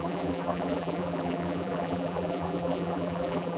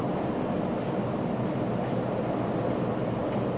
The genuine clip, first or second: second